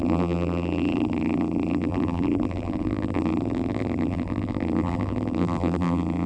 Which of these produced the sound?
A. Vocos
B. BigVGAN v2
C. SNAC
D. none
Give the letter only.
B